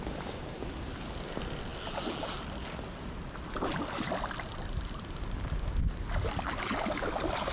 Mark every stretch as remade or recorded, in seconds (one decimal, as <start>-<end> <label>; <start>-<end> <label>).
0.0-7.5 recorded